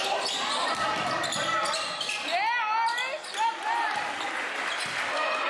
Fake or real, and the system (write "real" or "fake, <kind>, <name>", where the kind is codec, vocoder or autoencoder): real